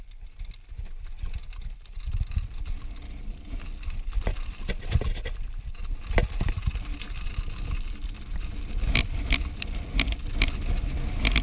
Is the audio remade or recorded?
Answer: recorded